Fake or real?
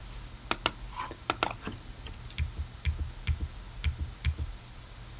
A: real